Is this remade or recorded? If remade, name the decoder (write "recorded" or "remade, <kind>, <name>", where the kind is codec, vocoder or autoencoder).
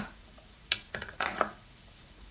remade, vocoder, Vocos